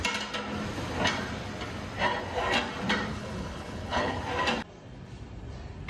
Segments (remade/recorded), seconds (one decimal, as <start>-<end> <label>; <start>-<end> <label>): 0.0-3.1 recorded; 3.1-4.2 remade; 4.2-5.9 recorded